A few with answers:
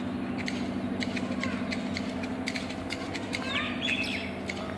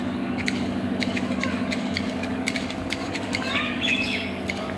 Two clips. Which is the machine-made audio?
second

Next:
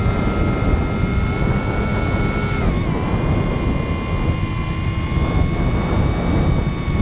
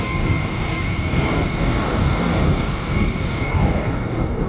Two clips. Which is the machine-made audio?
second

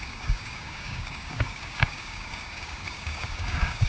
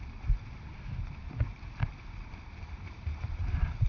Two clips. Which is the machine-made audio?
first